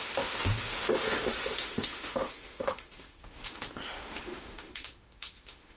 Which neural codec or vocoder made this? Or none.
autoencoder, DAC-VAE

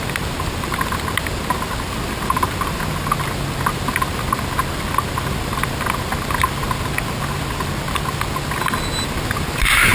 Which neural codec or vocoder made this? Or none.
none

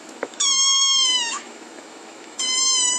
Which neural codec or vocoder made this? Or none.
autoencoder, DAC-VAE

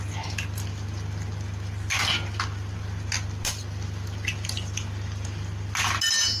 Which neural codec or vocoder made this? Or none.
none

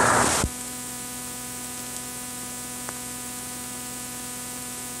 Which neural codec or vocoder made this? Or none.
none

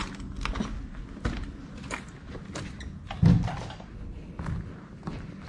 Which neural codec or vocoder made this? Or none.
none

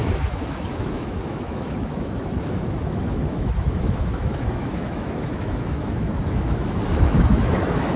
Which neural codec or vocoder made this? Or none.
autoencoder, DAC-VAE